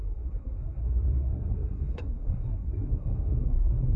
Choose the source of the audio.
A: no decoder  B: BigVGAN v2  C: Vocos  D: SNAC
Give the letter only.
D